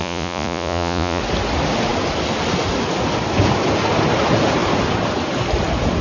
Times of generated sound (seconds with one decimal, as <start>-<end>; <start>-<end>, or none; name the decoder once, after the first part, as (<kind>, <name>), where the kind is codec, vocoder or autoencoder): 0.0-1.2 (vocoder, Vocos)